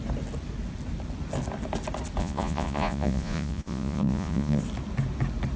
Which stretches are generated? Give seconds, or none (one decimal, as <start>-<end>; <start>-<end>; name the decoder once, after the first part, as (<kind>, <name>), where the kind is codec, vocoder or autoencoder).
2.2-4.6 (vocoder, Vocos)